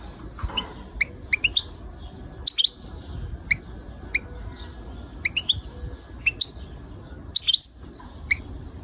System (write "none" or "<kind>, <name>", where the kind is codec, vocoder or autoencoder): none